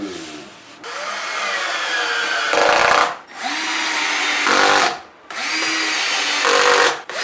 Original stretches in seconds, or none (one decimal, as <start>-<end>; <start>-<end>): 0.0-7.2